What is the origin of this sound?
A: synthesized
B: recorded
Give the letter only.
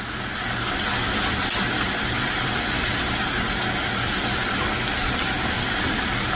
B